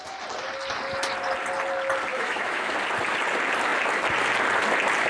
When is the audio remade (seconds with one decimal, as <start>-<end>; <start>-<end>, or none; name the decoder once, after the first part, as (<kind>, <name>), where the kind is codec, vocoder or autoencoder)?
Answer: 2.1-2.7 (autoencoder, DAC-VAE)